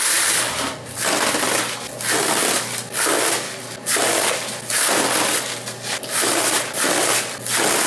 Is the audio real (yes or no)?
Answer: yes